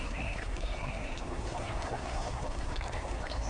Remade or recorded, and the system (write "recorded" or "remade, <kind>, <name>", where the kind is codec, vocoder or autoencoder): remade, codec, SNAC